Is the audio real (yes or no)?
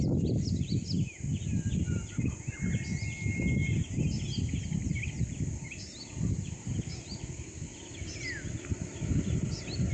yes